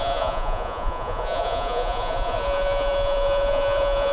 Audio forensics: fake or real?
fake